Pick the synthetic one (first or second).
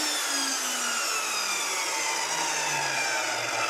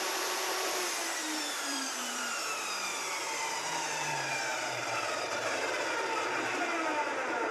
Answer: second